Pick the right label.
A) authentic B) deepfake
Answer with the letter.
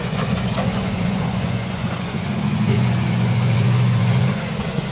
B